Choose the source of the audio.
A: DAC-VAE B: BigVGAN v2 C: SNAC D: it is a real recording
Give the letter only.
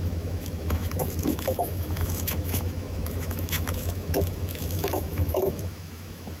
A